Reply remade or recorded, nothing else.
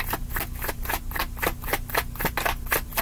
recorded